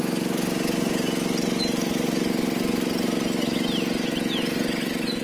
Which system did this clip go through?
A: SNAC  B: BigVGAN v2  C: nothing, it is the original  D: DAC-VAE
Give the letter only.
C